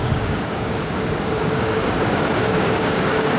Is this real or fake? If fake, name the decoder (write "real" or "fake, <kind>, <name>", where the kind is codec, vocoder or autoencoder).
fake, codec, DAC